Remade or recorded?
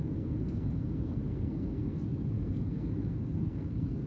remade